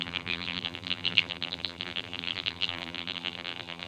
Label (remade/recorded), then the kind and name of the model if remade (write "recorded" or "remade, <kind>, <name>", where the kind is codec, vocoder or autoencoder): remade, vocoder, BigVGAN v2